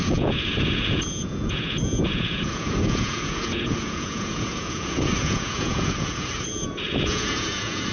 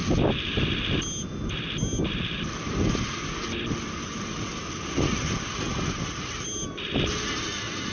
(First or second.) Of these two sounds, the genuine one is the second